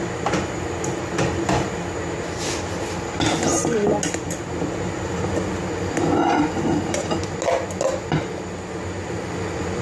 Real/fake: real